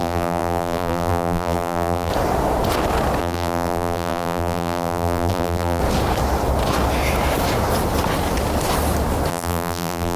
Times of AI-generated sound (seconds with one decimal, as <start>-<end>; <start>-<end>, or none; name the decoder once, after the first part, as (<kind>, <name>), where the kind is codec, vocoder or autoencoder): 0.0-2.1 (vocoder, BigVGAN v2); 3.2-5.8; 9.3-10.2